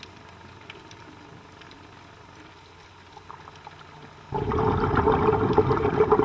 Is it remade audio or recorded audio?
recorded